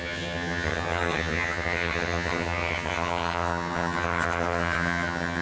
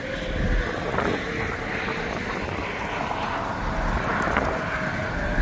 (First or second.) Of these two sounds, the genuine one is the second